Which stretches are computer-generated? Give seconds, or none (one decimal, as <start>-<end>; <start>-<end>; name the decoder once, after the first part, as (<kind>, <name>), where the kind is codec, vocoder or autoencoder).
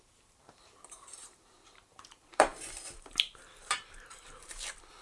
0.0-5.0 (vocoder, BigVGAN v2)